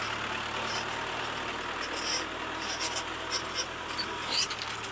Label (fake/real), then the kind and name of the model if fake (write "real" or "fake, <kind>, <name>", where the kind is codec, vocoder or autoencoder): real